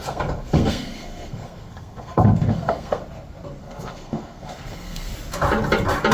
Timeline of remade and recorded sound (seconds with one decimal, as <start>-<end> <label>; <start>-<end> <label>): 0.0-3.0 remade; 3.0-3.6 recorded; 3.6-5.1 remade; 5.1-6.1 recorded